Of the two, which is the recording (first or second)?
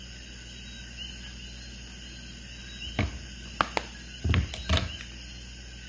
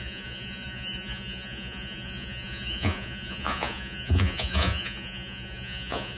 first